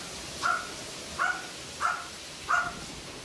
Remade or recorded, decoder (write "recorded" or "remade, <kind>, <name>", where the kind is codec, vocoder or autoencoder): recorded